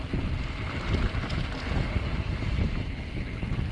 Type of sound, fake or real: real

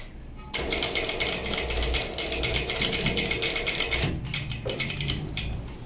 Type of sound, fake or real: real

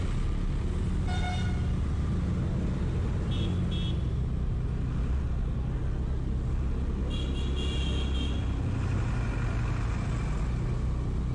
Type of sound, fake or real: real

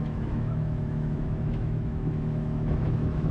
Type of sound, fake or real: fake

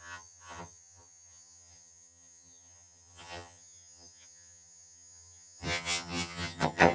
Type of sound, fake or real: fake